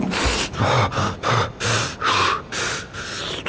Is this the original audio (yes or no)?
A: yes